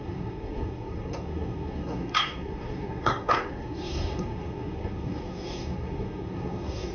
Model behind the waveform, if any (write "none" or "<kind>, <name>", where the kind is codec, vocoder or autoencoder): codec, SNAC